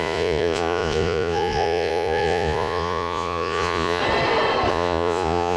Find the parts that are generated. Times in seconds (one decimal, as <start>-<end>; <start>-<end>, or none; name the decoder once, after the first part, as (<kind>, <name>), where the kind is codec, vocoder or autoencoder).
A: 0.0-4.0 (vocoder, Vocos); 4.7-5.6